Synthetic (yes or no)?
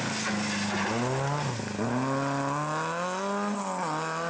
no